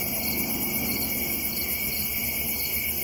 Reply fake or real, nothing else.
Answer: real